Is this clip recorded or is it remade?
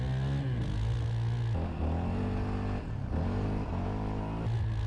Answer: recorded